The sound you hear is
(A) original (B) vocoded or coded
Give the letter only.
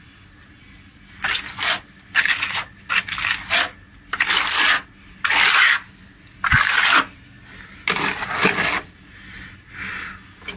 A